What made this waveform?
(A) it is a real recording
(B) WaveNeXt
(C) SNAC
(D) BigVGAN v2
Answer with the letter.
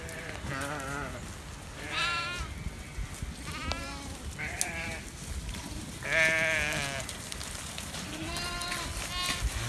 A